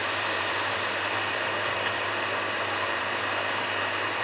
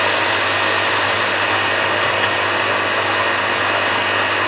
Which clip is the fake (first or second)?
first